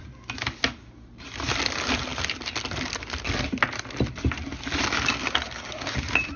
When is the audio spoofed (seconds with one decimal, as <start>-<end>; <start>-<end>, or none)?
none